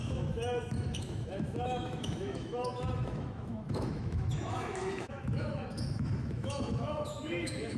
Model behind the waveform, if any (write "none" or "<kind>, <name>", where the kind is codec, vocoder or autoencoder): autoencoder, DAC-VAE